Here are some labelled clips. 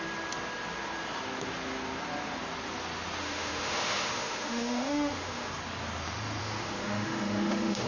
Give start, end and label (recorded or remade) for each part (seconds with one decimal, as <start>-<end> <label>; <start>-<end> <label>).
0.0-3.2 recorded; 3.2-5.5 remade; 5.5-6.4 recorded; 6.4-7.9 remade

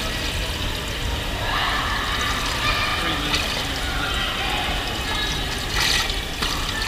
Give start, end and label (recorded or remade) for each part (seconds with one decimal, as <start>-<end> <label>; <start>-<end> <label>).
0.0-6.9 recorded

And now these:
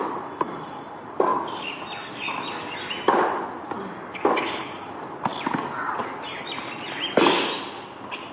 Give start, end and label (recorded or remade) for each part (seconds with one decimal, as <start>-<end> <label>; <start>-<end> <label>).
0.0-8.3 recorded

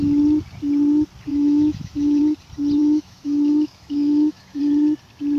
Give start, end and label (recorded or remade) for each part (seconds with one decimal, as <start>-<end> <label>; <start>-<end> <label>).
0.0-1.3 recorded; 1.3-2.2 remade; 2.2-2.8 recorded; 2.8-4.6 remade; 4.6-5.4 recorded